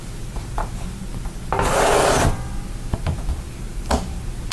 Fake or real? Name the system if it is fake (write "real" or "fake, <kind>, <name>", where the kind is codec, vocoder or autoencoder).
real